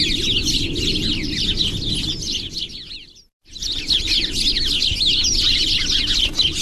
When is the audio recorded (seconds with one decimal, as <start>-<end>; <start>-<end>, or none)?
0.0-0.4; 4.4-4.9; 5.7-6.6